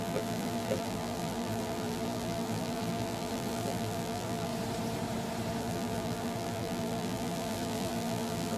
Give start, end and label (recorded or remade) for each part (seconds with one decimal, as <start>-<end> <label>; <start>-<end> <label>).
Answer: 0.0-4.5 remade; 4.5-5.6 recorded; 5.6-8.6 remade